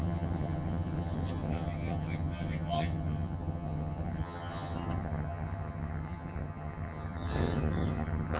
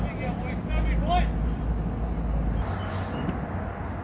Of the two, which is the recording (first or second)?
second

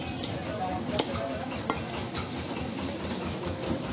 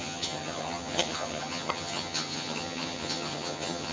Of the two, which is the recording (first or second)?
first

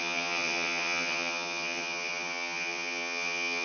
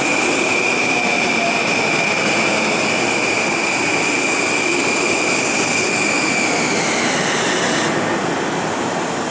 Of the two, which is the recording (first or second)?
second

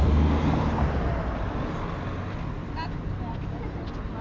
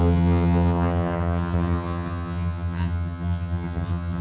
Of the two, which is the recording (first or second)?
first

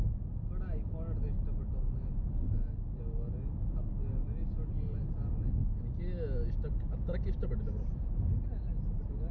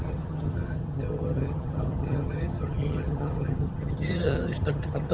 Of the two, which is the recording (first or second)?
first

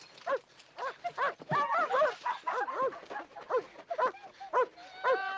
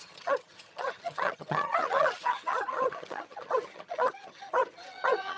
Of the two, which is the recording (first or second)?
first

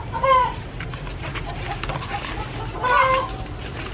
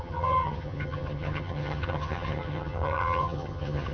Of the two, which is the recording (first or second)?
first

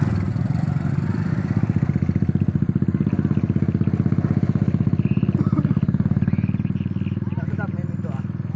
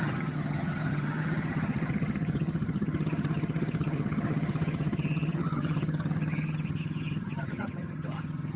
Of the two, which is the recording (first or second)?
first